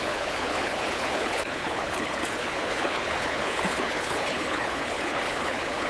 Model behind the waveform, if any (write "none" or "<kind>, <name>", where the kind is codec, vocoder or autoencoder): codec, HILCodec